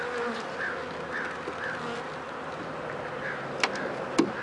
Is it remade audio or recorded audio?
recorded